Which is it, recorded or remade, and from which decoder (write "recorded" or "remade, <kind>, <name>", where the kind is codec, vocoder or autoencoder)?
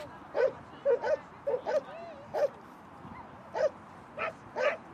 recorded